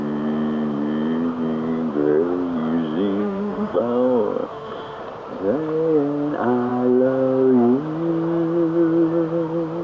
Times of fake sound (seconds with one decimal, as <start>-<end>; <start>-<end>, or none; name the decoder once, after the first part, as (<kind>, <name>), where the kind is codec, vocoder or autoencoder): 3.2-3.8 (autoencoder, DAC-VAE); 4.5-5.0